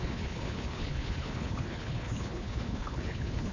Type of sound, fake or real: fake